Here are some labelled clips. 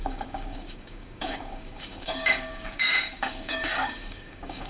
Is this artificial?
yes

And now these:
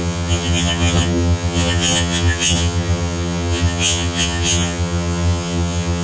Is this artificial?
yes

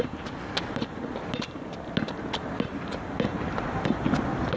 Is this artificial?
no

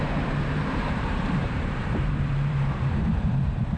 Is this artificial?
yes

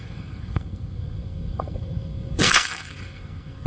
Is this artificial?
yes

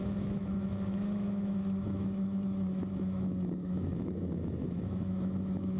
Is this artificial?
yes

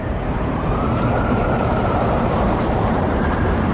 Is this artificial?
yes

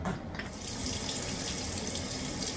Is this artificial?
no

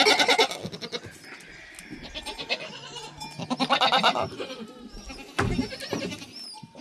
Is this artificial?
no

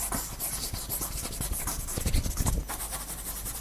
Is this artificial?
no